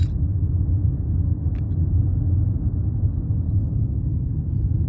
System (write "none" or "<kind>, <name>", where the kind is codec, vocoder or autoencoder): none